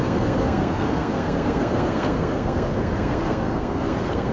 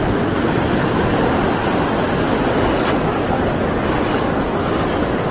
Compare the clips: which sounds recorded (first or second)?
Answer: second